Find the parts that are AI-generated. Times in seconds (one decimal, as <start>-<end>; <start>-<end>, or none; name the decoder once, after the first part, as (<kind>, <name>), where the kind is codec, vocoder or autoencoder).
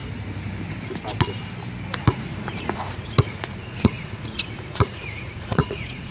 2.0-6.1 (vocoder, Vocos)